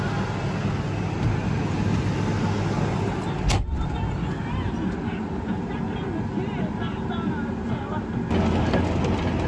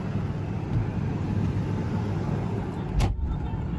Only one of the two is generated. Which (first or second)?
second